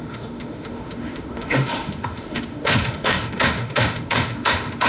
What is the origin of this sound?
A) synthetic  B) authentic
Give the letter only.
A